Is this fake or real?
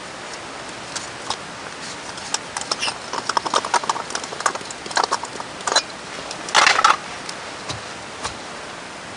real